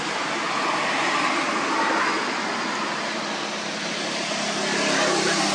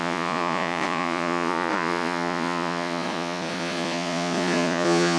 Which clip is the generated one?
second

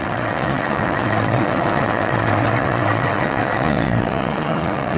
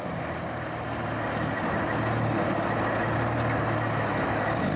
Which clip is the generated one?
first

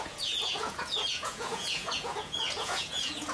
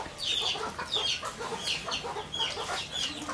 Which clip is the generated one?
first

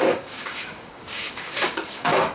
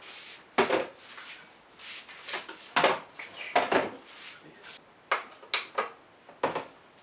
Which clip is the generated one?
first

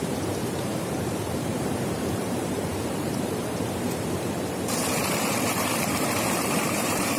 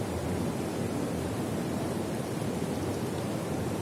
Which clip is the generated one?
first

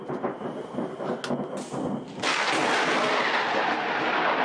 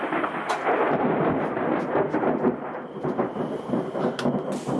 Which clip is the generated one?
second